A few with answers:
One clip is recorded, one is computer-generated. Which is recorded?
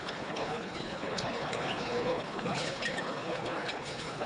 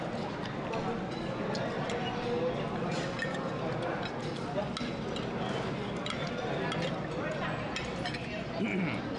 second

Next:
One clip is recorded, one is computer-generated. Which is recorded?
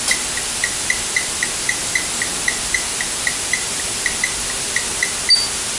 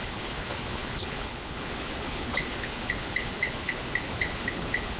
first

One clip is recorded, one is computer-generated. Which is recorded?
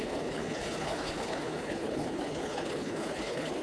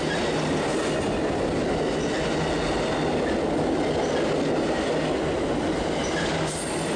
second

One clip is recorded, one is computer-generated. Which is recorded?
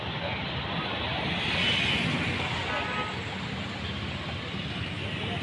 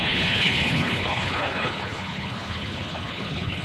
first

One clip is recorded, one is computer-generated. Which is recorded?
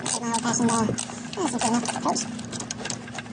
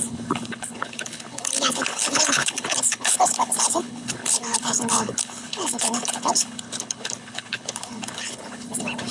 first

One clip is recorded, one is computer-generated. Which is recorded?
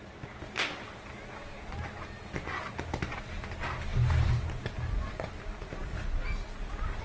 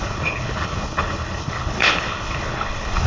first